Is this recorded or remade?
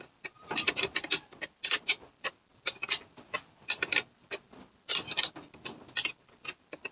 recorded